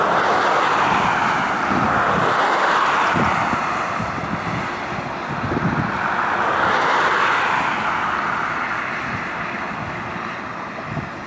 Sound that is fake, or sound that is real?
real